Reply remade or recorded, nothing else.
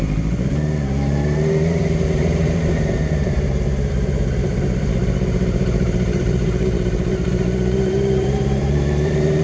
remade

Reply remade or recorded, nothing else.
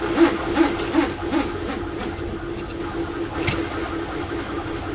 recorded